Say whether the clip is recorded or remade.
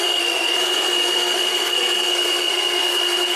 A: remade